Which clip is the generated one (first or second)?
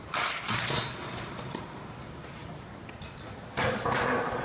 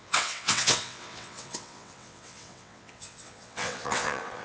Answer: second